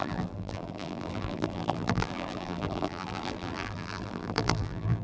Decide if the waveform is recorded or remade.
remade